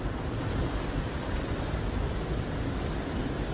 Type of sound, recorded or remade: recorded